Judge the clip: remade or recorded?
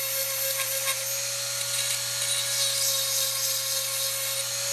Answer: recorded